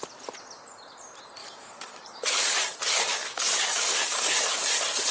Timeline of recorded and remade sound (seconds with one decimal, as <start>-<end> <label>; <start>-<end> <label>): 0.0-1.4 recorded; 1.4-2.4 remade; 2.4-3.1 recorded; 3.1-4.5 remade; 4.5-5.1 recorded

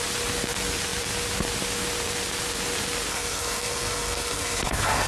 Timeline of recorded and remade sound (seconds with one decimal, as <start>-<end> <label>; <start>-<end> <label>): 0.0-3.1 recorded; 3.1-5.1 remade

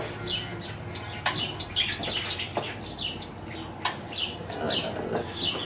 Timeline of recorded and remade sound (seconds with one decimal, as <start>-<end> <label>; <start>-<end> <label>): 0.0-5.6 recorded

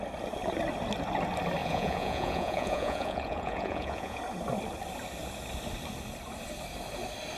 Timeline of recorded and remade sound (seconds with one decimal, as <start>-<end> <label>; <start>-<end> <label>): 0.0-1.6 recorded; 1.6-4.2 remade; 4.2-7.4 recorded